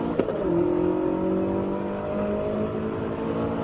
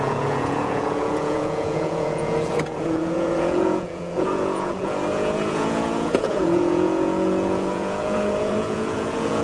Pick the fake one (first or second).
second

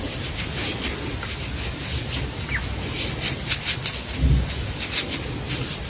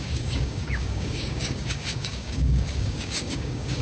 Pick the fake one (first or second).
second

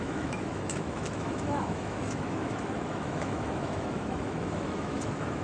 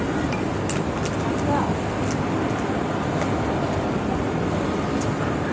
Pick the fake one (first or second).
first